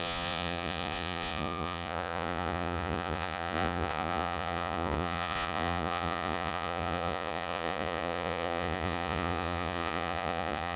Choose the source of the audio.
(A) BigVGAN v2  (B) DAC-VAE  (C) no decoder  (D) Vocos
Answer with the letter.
D